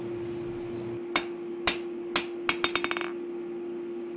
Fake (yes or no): no